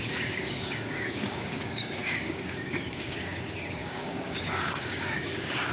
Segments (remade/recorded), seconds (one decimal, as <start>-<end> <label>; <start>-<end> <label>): 0.0-5.7 remade